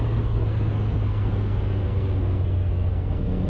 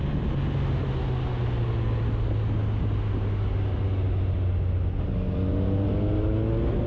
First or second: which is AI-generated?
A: first